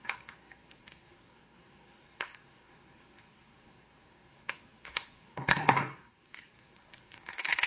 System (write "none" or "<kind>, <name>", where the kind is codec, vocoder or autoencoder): codec, SNAC